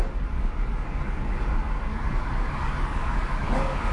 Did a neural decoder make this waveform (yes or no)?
yes